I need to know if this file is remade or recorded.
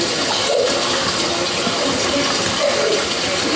recorded